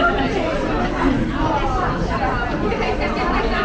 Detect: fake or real real